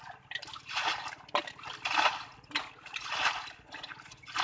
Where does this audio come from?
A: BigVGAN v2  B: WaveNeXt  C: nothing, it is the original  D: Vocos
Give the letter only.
C